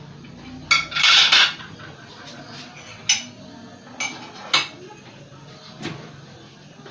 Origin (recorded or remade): recorded